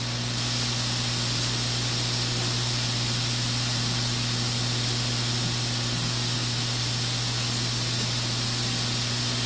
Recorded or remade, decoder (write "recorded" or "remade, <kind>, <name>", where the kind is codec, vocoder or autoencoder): recorded